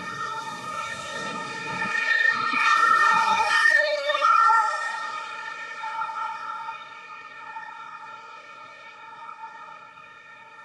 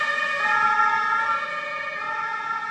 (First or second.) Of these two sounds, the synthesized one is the first